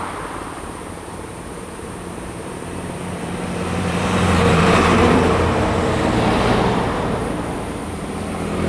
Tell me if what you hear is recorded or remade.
remade